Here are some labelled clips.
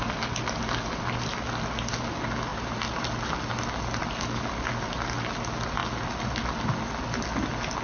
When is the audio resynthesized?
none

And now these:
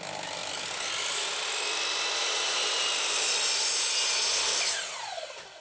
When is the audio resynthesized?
none

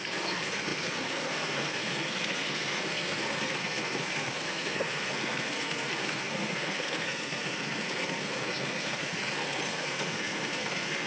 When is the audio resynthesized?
0.0-11.1 (codec, SNAC)

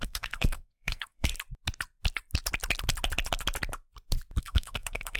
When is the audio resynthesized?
0.0-1.3 (codec, SNAC); 4.4-5.2

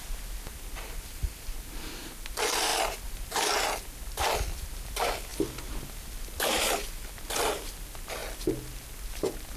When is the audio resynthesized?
2.7-3.6 (vocoder, BigVGAN v2); 5.3-7.1

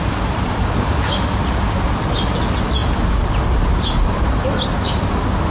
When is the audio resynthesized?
none